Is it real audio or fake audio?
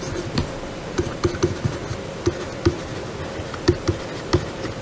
real